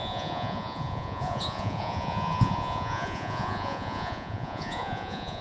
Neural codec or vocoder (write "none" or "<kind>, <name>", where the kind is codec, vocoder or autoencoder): vocoder, Vocos